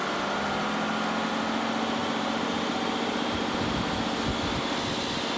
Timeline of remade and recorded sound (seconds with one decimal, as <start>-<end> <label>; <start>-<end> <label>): 0.0-2.0 recorded; 2.0-3.8 remade; 3.8-5.4 recorded